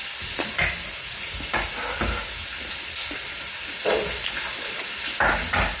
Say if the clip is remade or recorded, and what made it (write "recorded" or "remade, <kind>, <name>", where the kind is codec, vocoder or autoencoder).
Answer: recorded